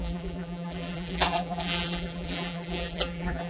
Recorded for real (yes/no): no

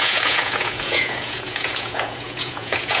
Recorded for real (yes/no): no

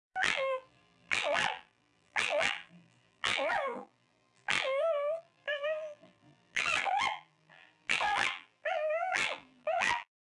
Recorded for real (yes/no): no